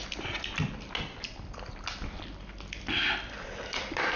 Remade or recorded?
remade